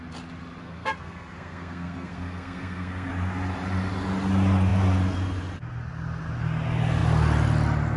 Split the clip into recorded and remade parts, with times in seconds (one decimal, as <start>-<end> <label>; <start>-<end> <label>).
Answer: 0.0-0.6 recorded; 0.6-3.1 remade; 3.1-8.0 recorded